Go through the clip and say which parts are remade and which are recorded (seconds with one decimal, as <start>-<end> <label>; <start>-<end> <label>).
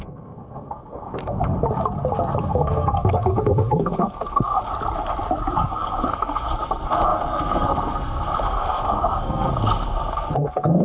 0.0-1.5 remade; 1.5-2.4 recorded; 2.4-4.7 remade; 4.7-5.6 recorded; 5.6-10.8 remade